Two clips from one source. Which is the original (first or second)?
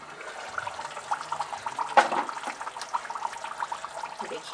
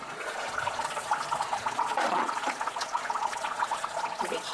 first